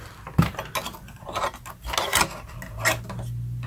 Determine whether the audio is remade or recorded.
recorded